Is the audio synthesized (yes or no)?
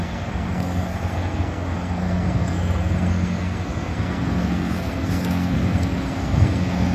yes